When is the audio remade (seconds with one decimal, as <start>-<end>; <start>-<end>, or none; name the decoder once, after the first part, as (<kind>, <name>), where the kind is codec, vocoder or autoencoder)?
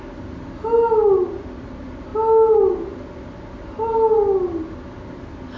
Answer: none